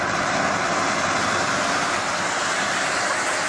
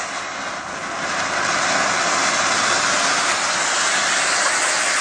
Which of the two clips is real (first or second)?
second